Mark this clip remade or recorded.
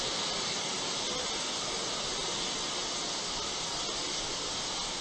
recorded